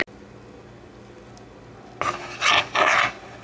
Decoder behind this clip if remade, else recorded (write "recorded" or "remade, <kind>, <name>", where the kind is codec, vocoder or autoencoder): recorded